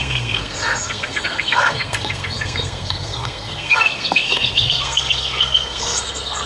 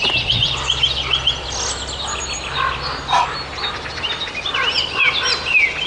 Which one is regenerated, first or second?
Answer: first